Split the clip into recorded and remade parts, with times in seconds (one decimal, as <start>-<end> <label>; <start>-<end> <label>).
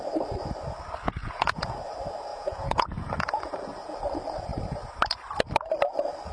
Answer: 0.0-1.2 recorded; 1.2-1.8 remade; 1.8-2.3 recorded; 2.3-3.5 remade; 3.5-6.3 recorded